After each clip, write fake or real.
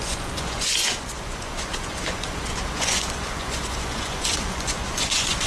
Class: fake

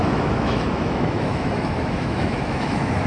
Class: fake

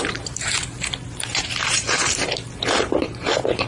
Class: fake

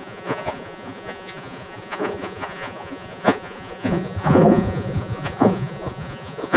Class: fake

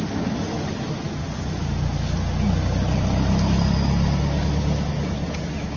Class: real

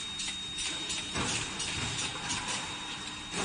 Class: real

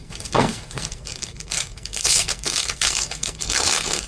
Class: fake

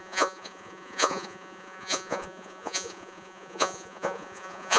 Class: fake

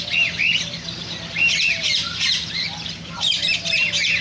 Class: real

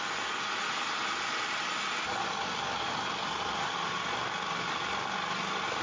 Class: real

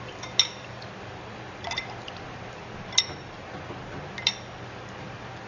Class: real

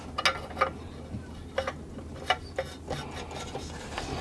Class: real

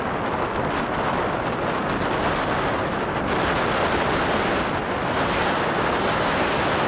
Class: real